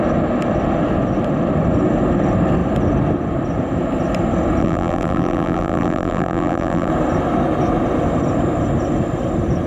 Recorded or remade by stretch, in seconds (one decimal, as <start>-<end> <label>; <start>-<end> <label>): 0.0-4.6 recorded; 4.6-6.9 remade; 6.9-9.7 recorded